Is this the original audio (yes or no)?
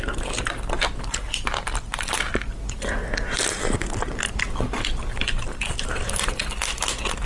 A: yes